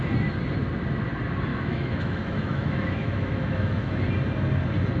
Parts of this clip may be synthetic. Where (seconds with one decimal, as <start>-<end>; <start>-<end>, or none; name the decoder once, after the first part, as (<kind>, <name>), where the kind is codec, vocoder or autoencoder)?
1.5-4.0 (autoencoder, DAC-VAE)